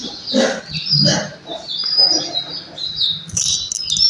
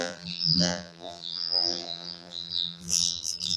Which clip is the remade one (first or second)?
second